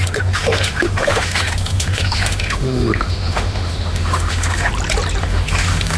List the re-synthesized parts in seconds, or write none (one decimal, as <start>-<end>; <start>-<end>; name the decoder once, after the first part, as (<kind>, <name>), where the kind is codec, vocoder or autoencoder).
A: 0.0-4.7 (autoencoder, DAC-VAE); 5.2-6.0